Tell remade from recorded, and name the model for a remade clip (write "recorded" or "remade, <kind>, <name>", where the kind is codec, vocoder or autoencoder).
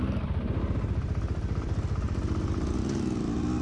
recorded